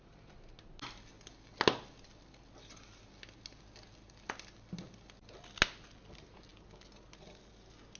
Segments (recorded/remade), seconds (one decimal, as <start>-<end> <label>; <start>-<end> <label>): 0.0-8.0 recorded